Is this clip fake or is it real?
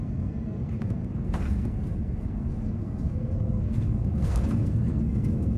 fake